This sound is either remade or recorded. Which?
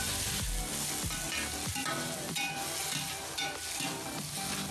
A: recorded